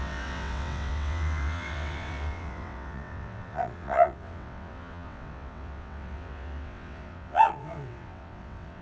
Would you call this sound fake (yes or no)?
yes